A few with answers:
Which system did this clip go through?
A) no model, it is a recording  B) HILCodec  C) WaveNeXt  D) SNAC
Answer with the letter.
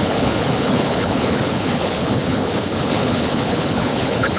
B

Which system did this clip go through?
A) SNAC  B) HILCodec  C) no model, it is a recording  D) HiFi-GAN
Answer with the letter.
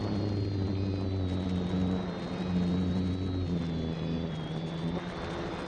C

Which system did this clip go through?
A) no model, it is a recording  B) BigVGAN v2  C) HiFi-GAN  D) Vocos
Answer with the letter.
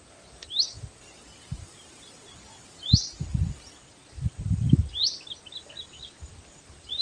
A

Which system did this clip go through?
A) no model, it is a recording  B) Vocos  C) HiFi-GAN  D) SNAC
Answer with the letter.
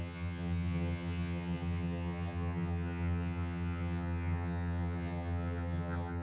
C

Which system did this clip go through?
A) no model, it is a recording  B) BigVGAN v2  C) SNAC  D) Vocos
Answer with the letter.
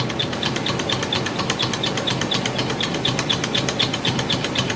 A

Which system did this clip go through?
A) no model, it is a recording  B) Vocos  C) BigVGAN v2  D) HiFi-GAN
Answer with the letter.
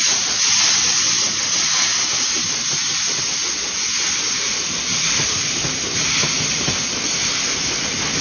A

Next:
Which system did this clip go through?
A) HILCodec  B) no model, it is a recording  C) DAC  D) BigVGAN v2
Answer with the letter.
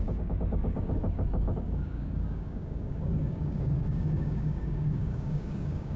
C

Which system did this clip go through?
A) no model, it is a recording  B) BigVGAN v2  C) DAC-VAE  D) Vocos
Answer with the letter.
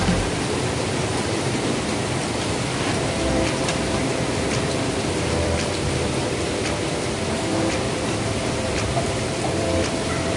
B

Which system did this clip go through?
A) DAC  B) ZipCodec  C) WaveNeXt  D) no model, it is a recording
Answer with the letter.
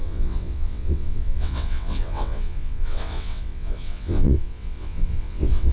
C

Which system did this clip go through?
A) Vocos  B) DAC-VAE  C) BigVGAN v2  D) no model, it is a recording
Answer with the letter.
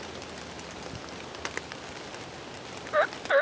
D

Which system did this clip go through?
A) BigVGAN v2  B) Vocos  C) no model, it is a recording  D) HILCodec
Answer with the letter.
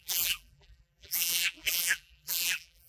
A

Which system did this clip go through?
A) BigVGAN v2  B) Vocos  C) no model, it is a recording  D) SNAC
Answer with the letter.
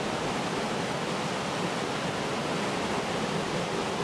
C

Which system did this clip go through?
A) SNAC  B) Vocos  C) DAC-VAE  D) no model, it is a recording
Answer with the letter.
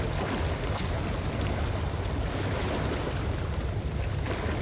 D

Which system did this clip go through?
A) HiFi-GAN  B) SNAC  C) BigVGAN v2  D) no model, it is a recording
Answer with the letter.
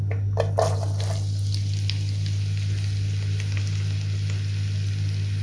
D